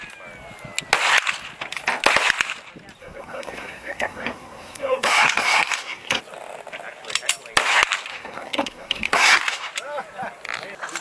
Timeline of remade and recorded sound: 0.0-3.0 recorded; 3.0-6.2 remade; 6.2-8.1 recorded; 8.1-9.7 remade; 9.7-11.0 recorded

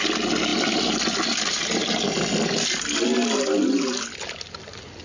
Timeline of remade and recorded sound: 0.0-5.0 recorded

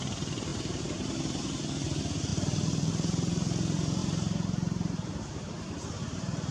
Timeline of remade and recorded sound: 0.0-0.5 recorded; 0.5-1.7 remade; 1.7-4.0 recorded; 4.0-6.5 remade

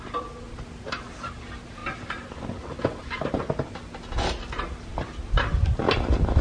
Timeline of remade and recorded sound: 0.0-6.4 recorded

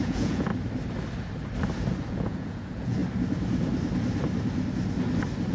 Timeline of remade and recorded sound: 0.0-0.5 remade; 0.5-2.1 recorded; 2.1-3.0 remade; 3.0-5.5 recorded